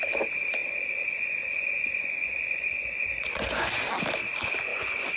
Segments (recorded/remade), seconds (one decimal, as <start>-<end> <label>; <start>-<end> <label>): 0.0-0.6 recorded; 0.6-3.7 remade; 3.7-4.7 recorded; 4.7-5.2 remade